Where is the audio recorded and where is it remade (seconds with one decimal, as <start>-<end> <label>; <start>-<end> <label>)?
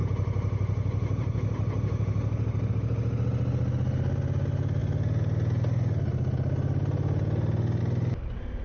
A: 0.0-8.6 recorded